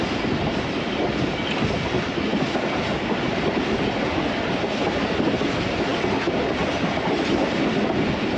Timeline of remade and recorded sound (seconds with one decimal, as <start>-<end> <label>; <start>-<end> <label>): 0.0-8.4 recorded